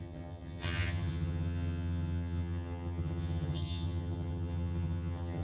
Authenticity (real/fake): fake